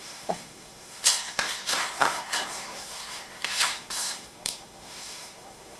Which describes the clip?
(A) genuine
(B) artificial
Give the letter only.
B